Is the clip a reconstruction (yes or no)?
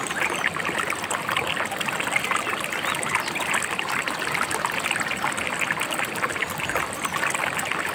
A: no